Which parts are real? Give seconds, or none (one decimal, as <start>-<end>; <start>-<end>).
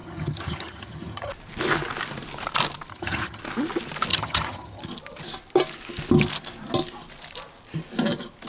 1.3-2.9; 3.4-4.1; 4.8-8.5